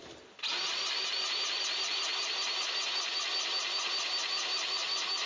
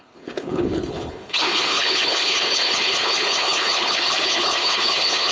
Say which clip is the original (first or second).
first